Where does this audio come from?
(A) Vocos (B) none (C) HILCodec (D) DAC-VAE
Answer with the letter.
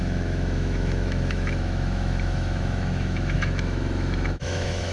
D